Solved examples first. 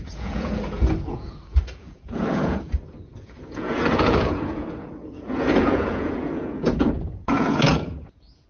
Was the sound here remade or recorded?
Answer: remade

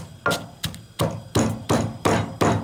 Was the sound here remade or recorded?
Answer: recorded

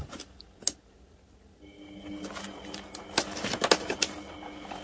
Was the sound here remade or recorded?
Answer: recorded